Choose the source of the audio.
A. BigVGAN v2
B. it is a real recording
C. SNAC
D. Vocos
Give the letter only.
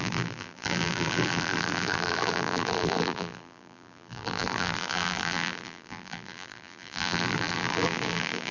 A